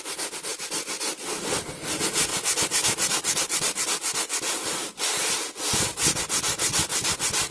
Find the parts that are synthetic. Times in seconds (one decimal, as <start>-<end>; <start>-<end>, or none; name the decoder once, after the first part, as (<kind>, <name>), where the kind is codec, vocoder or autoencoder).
none

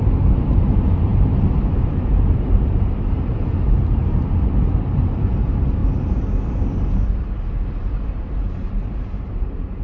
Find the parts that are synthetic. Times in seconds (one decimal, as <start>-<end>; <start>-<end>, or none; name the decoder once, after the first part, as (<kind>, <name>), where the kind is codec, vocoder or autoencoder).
0.0-5.8 (vocoder, BigVGAN v2); 7.7-9.8

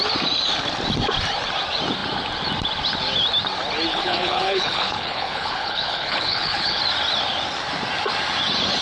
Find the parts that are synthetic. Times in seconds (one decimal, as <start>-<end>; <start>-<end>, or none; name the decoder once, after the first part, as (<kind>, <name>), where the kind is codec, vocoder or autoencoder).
3.9-6.8 (codec, HILCodec)

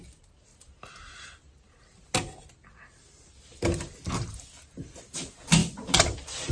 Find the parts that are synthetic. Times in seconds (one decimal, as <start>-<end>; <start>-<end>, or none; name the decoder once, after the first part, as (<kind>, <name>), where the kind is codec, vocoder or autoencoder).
none

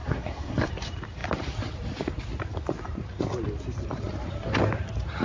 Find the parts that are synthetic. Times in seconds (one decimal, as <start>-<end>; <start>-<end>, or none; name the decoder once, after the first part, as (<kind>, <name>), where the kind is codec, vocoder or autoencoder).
0.0-0.7 (codec, SNAC)

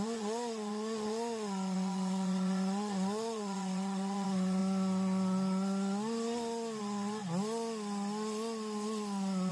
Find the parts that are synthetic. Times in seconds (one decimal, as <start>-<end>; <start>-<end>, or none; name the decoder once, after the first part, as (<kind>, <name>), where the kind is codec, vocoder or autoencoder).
0.0-4.6 (vocoder, Vocos); 6.8-7.2

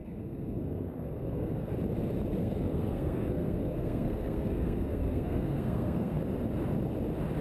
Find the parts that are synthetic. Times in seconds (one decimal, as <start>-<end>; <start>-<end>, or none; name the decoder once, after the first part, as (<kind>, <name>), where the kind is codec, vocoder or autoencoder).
0.0-1.7 (codec, SNAC); 2.4-6.2